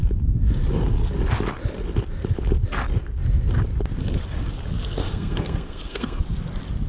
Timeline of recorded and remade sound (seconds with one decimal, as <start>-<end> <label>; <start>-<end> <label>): 0.0-5.0 recorded; 5.0-6.2 remade; 6.2-6.9 recorded